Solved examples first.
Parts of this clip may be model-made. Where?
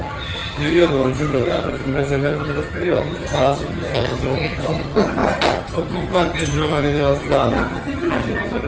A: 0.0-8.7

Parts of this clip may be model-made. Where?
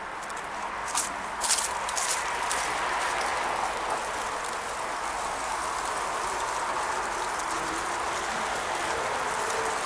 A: none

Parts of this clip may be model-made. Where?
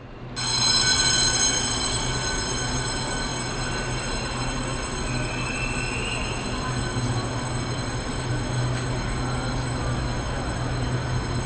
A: none